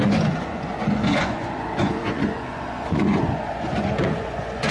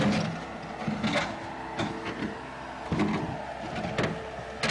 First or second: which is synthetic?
first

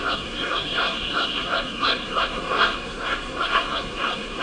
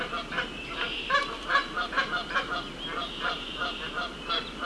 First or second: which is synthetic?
first